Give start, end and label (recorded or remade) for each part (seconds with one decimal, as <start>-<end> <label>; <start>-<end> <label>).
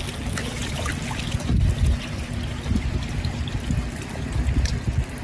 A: 0.0-5.2 recorded